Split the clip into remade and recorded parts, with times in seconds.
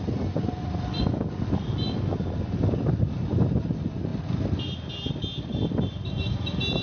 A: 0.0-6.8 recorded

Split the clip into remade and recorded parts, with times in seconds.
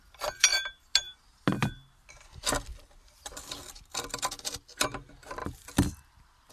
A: 0.0-6.5 recorded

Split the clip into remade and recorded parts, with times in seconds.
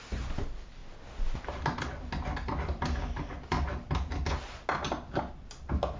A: 0.0-6.0 recorded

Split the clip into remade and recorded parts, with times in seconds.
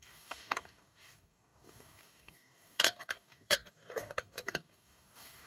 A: 0.0-5.5 remade